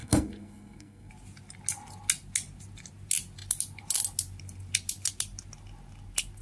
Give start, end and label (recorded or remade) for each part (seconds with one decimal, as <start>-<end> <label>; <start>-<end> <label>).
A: 0.0-1.1 remade; 1.1-6.4 recorded